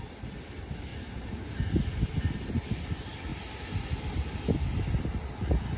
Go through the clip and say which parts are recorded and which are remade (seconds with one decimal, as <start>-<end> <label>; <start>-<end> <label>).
0.0-0.9 recorded; 0.9-1.5 remade; 1.5-5.8 recorded